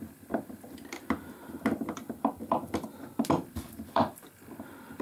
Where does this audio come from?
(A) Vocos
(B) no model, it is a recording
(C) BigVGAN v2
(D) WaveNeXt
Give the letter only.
C